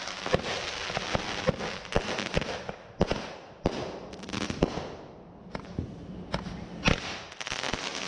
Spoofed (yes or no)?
no